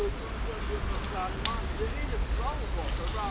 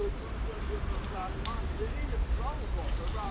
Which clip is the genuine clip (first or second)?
first